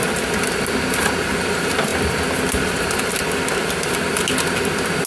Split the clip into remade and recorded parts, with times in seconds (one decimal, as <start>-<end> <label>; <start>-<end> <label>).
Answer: 0.0-5.1 recorded